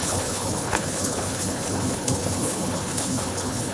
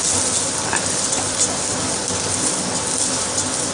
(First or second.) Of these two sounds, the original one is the second